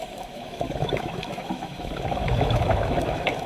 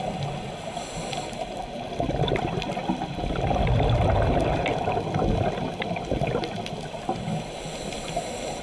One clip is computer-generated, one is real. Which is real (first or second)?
second